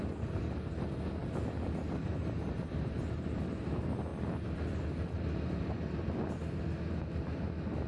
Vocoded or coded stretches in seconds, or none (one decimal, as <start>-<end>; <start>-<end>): none